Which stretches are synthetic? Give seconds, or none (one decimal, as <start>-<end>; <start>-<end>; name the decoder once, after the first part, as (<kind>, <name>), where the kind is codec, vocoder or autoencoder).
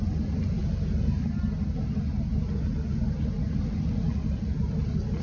none